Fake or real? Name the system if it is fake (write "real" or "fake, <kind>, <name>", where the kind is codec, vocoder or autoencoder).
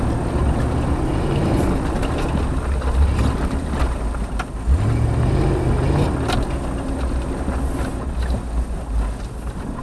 real